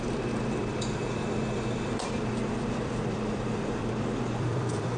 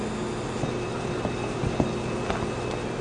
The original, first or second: second